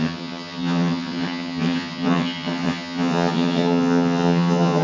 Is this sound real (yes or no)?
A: no